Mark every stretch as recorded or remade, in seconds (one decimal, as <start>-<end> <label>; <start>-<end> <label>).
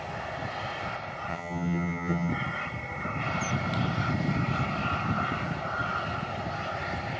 0.0-1.3 recorded; 1.3-2.3 remade; 2.3-7.2 recorded